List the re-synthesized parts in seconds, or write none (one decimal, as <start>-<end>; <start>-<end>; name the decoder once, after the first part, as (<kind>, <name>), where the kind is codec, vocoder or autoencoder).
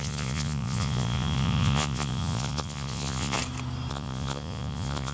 0.0-3.4 (vocoder, Vocos); 3.9-5.1